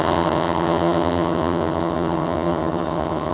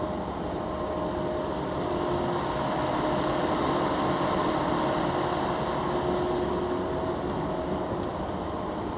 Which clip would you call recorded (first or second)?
second